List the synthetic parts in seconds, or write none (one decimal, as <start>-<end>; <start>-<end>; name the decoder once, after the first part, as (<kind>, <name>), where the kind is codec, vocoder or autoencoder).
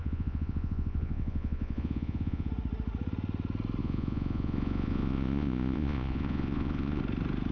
0.0-2.5 (vocoder, Vocos); 3.8-7.0